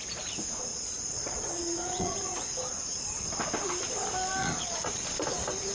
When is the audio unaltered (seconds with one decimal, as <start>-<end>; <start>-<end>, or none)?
0.0-0.7; 2.5-4.4; 5.0-5.7